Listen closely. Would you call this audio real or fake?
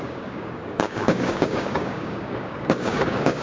fake